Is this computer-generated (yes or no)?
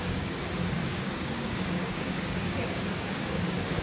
yes